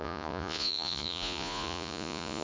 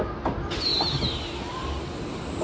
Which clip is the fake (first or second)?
first